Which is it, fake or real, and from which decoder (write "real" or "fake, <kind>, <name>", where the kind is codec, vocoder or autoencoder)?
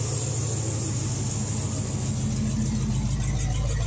real